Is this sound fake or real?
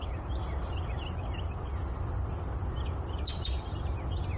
real